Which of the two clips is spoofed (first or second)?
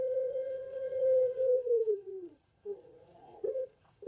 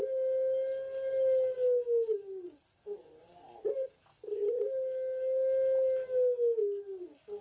first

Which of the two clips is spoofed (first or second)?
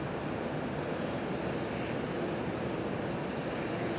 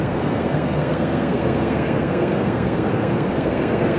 second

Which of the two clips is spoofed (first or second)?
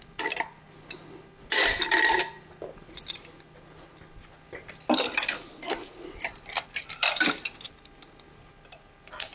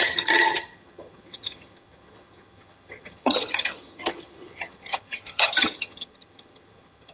second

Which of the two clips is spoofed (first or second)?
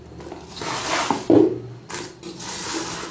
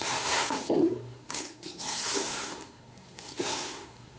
second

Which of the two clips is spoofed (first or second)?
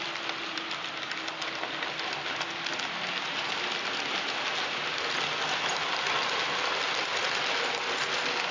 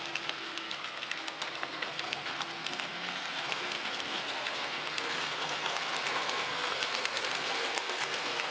second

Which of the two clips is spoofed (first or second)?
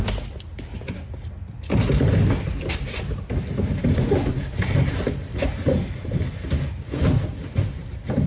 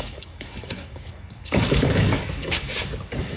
second